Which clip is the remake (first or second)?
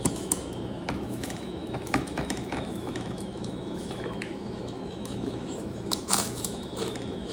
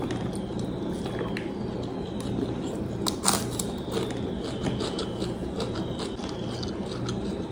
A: first